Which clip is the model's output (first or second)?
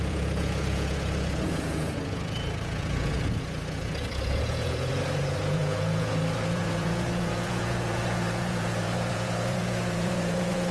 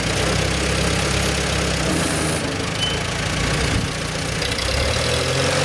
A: first